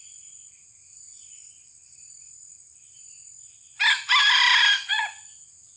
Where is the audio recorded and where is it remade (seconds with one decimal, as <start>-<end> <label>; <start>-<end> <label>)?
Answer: 0.0-1.4 remade; 1.4-4.9 recorded; 4.9-5.8 remade

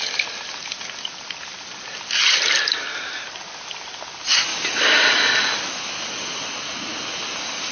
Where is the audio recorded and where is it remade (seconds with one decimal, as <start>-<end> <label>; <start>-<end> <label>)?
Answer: 0.0-7.7 recorded